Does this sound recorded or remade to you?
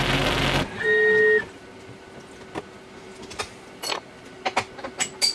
recorded